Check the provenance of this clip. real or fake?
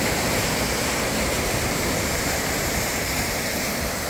fake